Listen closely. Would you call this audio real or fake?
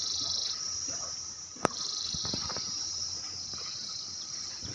fake